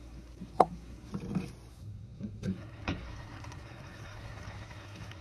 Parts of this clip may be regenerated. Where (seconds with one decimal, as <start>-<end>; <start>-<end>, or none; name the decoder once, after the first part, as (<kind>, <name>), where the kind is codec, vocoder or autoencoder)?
0.0-1.1 (codec, SNAC); 1.7-5.2